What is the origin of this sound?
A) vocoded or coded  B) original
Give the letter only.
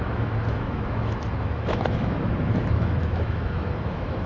A